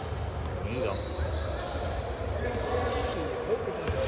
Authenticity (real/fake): real